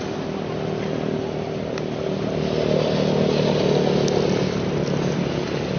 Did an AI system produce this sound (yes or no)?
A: no